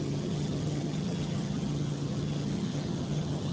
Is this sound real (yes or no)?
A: no